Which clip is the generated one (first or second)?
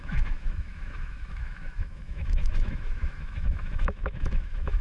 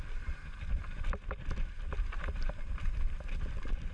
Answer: first